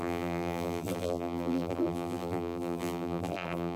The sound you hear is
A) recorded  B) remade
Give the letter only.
B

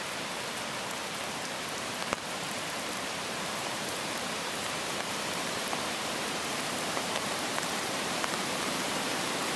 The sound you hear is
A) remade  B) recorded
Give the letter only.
A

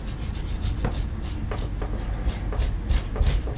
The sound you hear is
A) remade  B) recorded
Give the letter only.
B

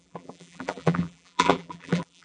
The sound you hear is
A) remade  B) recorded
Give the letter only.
A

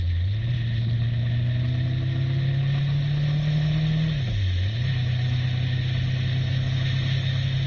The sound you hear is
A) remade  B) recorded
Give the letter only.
B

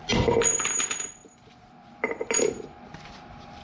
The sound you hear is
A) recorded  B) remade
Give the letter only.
B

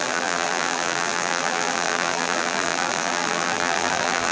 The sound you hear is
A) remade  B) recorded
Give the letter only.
A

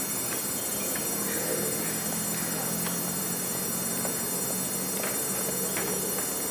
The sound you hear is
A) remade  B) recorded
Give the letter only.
A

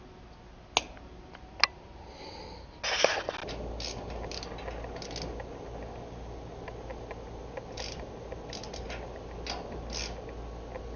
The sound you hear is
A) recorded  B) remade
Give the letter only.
A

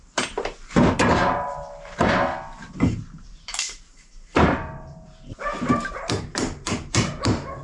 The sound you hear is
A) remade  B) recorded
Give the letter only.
A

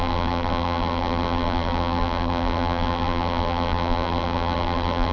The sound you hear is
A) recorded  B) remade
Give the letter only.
B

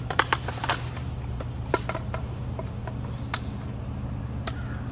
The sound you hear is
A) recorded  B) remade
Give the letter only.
B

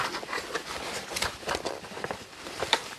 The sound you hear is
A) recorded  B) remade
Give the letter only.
B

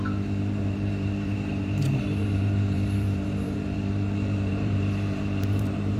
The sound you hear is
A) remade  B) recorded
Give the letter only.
A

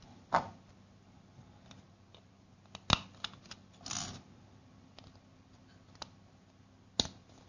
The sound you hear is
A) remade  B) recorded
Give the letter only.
B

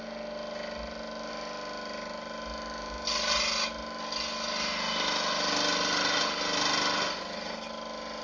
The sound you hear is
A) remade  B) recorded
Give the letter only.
B